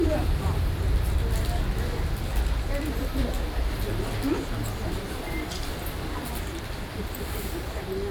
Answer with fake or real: real